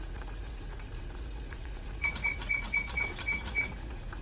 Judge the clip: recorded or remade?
remade